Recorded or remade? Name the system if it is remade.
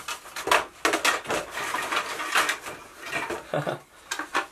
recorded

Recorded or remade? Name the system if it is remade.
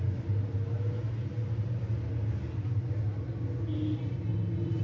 recorded